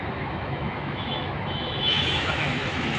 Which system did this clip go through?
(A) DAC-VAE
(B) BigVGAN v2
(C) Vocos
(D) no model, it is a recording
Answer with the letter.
A